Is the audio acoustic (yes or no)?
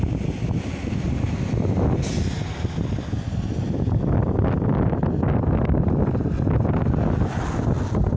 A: yes